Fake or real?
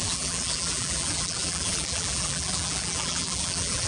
fake